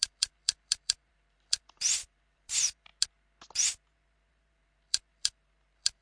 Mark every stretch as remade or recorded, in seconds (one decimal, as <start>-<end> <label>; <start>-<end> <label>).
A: 0.0-2.9 remade; 2.9-3.7 recorded; 3.7-6.0 remade